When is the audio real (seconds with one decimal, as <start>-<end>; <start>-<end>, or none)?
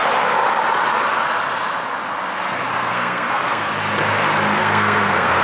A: 0.0-2.7; 3.7-4.6